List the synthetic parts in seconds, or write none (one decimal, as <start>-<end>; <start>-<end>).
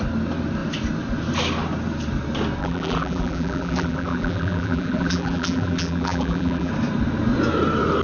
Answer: 2.6-6.7